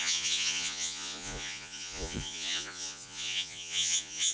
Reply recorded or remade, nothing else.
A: remade